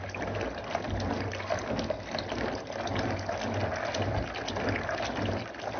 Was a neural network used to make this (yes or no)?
no